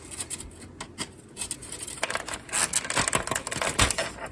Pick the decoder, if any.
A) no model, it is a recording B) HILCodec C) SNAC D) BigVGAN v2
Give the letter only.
A